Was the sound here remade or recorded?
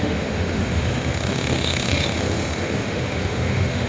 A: remade